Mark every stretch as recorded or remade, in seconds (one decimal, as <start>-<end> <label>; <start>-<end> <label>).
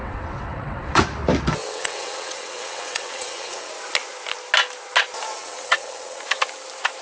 0.0-1.0 remade; 1.0-1.6 recorded; 1.6-3.7 remade; 3.7-5.4 recorded; 5.4-6.2 remade; 6.2-7.0 recorded